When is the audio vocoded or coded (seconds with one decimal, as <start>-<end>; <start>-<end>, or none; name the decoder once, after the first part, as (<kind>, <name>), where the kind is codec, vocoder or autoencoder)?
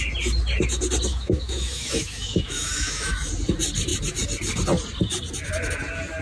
1.1-3.3 (autoencoder, DAC-VAE)